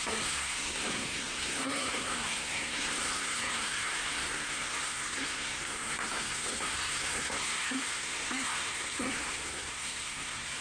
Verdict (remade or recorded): remade